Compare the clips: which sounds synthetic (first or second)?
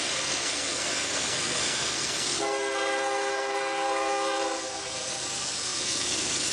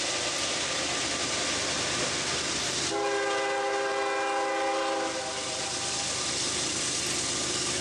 first